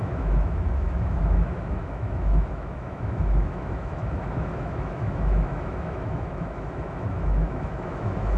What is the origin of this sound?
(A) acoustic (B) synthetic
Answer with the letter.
B